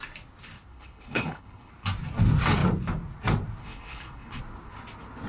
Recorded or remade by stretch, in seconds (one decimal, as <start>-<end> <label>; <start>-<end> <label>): 0.0-0.7 recorded; 0.7-1.7 remade; 1.7-3.6 recorded; 3.6-4.4 remade; 4.4-5.3 recorded

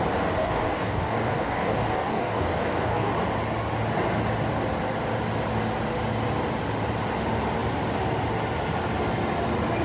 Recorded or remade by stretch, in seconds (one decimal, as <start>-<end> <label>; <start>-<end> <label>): 0.0-0.4 recorded; 0.4-3.1 remade; 3.1-9.8 recorded

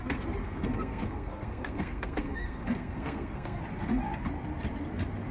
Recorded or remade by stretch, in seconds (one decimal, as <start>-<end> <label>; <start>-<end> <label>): 0.0-0.4 recorded; 0.4-3.6 remade; 3.6-5.3 recorded

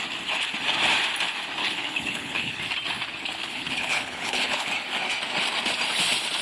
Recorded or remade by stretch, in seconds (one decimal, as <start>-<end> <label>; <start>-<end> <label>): 0.0-1.6 recorded; 1.6-2.6 remade; 2.6-3.4 recorded; 3.4-4.7 remade; 4.7-6.4 recorded

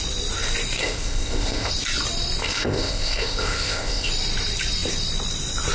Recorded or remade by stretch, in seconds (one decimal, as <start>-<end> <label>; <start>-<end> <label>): 0.0-0.8 recorded; 0.8-1.7 remade; 1.7-2.4 recorded; 2.4-4.1 remade; 4.1-5.7 recorded

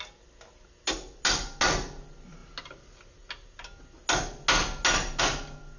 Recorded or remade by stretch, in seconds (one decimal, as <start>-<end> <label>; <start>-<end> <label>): 0.0-5.8 recorded

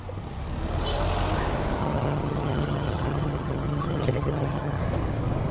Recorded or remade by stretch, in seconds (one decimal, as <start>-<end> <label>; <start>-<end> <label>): 0.0-1.8 recorded; 1.8-4.8 remade; 4.8-5.5 recorded